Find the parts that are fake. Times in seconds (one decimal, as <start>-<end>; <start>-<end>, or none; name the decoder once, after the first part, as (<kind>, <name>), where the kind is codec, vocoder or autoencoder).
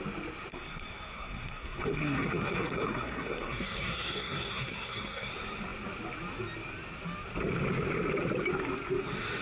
0.5-5.3 (codec, SNAC)